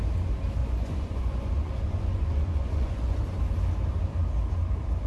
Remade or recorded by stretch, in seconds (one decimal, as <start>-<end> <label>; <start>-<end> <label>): 0.0-0.6 recorded; 0.6-3.2 remade; 3.2-5.1 recorded